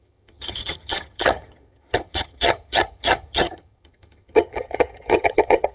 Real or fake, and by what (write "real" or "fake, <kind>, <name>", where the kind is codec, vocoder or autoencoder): fake, vocoder, HiFi-GAN